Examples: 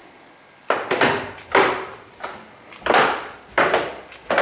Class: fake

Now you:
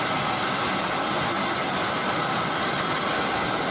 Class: real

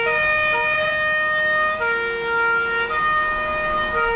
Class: real